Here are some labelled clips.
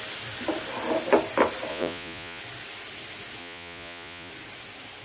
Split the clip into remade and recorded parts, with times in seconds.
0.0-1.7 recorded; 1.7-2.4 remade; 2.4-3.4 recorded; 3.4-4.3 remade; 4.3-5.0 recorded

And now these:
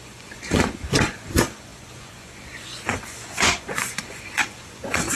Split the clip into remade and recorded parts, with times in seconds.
0.0-5.1 remade

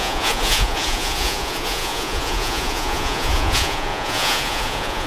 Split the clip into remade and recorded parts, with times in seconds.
0.0-5.1 remade

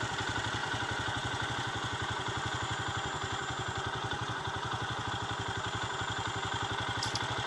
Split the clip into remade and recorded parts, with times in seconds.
0.0-0.6 recorded; 0.6-5.1 remade; 5.1-7.5 recorded

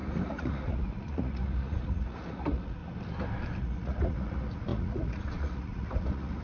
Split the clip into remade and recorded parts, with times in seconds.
0.0-2.8 remade; 2.8-3.6 recorded; 3.6-6.4 remade

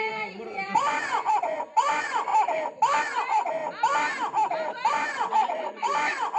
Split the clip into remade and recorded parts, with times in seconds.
0.0-2.3 remade; 2.3-3.0 recorded; 3.0-3.6 remade; 3.6-4.9 recorded; 4.9-6.4 remade